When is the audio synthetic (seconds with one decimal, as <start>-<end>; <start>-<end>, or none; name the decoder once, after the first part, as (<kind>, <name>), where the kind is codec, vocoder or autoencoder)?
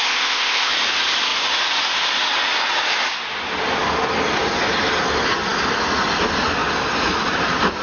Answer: 0.0-0.7 (codec, ZipCodec)